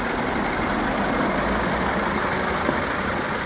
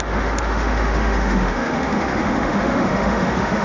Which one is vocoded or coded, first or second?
second